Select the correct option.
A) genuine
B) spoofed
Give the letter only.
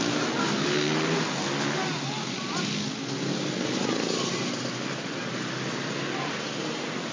A